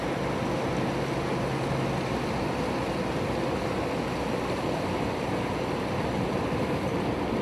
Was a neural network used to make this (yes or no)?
no